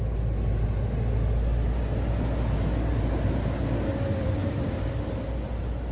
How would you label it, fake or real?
real